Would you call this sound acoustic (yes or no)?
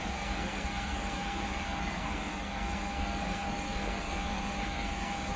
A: no